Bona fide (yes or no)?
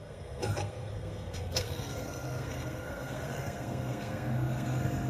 no